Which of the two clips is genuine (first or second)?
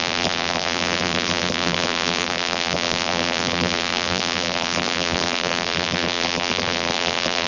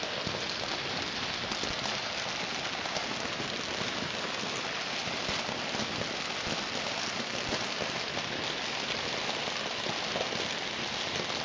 second